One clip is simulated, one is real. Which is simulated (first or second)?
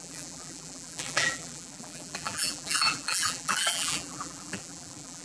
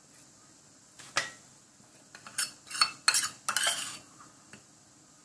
first